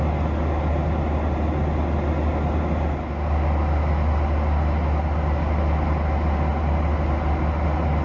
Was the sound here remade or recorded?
recorded